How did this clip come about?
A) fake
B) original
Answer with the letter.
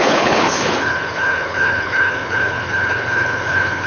A